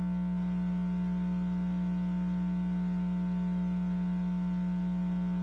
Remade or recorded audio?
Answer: recorded